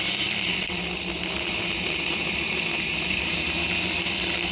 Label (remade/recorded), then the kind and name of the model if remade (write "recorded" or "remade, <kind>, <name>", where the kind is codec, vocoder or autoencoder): recorded